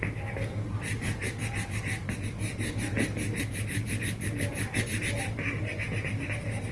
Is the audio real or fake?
real